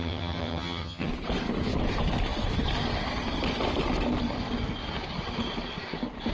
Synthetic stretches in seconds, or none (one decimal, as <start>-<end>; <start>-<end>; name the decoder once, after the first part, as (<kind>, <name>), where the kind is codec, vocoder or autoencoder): 0.0-1.1 (vocoder, HiFi-GAN)